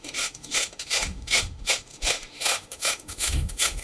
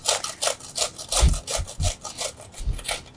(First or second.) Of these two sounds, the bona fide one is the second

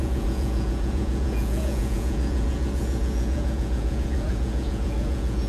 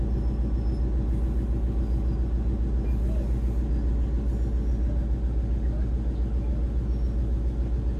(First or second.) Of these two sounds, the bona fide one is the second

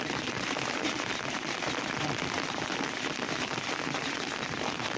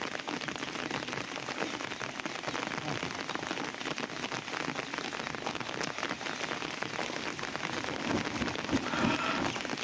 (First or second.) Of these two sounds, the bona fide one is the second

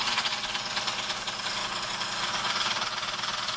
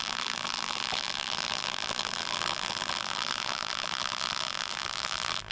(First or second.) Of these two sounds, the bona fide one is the first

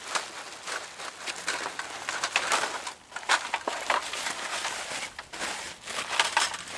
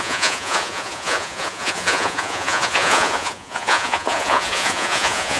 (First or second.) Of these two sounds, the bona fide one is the first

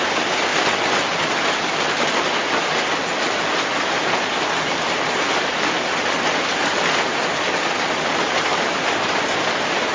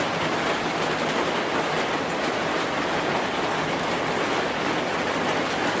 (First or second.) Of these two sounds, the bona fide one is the second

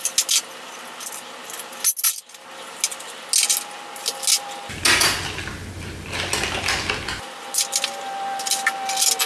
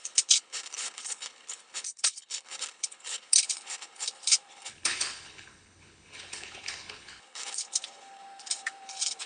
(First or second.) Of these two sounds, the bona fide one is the first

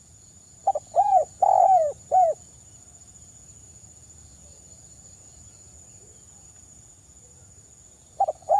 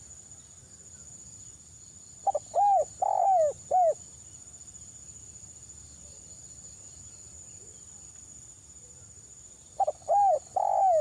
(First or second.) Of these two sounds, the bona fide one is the second